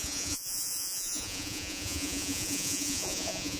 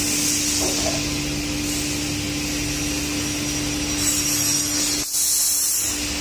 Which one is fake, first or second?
first